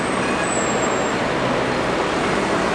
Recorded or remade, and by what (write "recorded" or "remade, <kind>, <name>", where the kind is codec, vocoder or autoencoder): recorded